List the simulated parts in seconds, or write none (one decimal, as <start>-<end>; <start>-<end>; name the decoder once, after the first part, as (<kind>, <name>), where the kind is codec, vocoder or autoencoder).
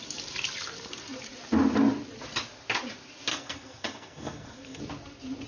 3.3-4.8 (codec, SNAC)